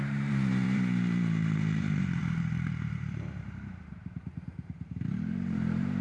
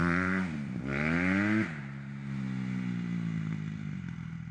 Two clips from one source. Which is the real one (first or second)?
second